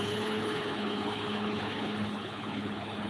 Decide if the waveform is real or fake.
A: fake